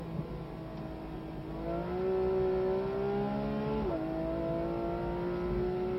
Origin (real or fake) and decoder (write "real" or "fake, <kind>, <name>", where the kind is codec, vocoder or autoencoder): real